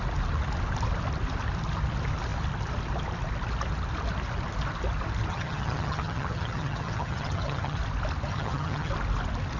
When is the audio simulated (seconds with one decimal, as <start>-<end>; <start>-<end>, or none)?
5.3-7.8; 8.3-8.9